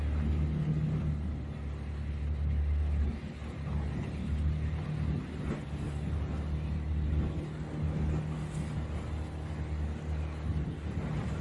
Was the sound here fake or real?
real